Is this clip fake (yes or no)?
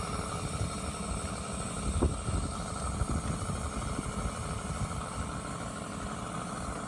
no